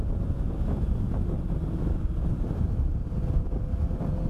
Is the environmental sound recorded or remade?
recorded